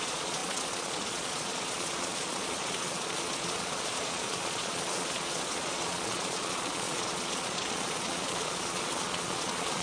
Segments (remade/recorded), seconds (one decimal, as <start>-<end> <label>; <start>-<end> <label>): 0.0-9.8 remade